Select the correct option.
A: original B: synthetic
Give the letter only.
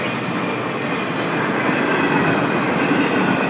A